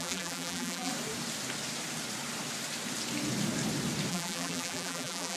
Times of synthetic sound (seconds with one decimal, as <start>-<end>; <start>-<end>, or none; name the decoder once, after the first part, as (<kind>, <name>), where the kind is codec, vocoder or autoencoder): 0.0-0.9 (vocoder, BigVGAN v2); 4.1-5.4